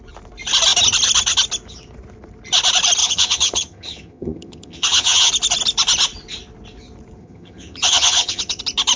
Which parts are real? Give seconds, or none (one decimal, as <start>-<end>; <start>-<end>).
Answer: 0.0-3.0; 5.3-7.2; 8.6-9.0